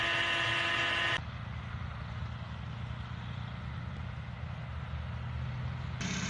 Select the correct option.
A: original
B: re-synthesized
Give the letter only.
A